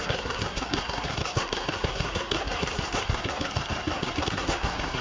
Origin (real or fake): fake